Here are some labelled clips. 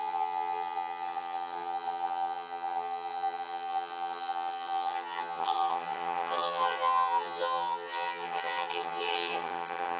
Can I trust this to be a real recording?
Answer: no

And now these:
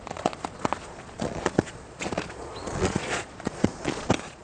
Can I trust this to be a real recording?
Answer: no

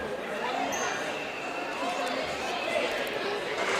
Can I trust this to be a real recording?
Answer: yes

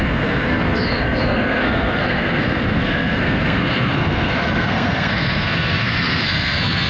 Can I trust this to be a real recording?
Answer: no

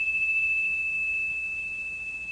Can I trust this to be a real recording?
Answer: yes